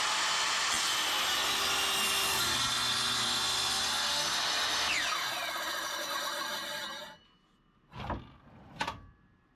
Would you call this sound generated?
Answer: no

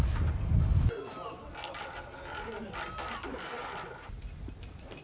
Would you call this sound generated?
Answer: no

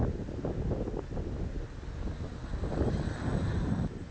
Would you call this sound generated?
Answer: no